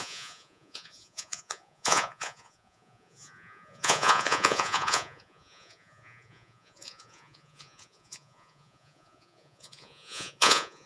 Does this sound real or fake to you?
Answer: fake